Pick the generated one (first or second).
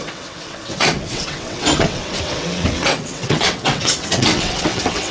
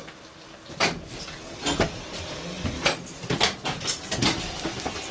first